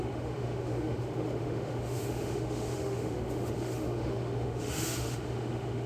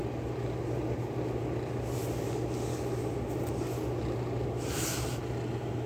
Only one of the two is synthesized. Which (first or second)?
first